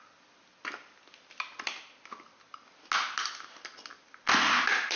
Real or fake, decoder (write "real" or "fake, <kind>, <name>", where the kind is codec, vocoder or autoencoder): real